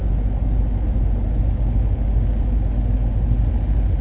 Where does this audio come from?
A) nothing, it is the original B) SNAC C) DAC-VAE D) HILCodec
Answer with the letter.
A